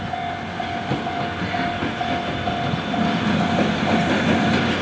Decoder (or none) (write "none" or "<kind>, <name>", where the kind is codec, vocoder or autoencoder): none